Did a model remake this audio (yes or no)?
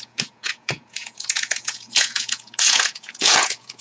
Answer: yes